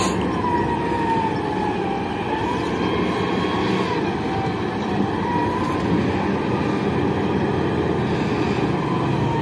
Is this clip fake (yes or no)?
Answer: no